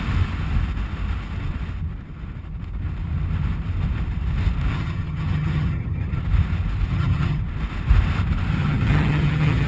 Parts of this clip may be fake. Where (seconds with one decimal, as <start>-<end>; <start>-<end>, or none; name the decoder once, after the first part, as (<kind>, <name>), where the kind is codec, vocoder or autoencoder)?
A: 4.7-6.2 (vocoder, HiFi-GAN); 6.9-7.4; 8.6-9.7